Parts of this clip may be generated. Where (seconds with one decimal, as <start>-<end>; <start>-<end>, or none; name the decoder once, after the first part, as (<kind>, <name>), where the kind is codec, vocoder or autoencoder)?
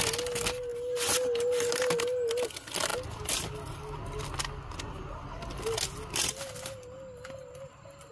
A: none